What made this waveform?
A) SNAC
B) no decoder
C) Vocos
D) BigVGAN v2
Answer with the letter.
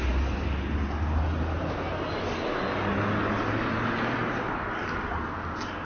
B